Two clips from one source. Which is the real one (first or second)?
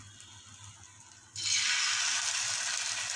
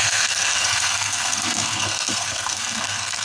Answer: first